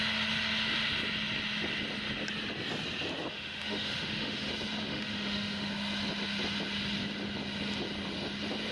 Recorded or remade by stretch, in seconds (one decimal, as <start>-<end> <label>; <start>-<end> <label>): 0.0-3.3 recorded; 3.3-4.5 remade; 4.5-4.9 recorded; 4.9-5.7 remade; 5.7-8.7 recorded